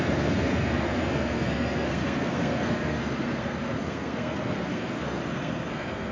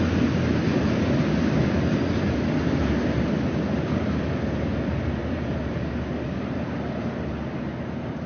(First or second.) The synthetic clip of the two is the first